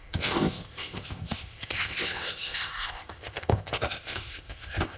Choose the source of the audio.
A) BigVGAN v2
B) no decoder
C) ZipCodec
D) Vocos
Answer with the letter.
C